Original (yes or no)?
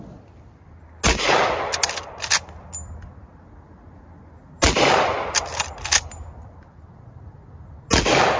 yes